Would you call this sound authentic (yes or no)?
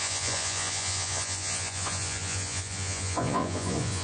no